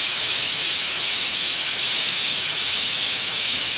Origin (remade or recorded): remade